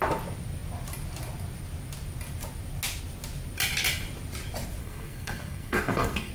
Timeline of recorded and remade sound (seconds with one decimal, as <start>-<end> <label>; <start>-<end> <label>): 0.0-4.8 recorded; 4.8-6.3 remade